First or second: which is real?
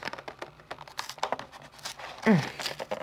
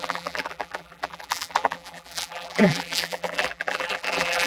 first